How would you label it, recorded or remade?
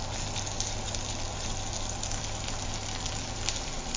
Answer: recorded